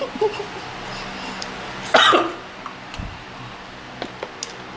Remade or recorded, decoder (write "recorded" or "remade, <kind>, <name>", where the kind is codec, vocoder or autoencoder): recorded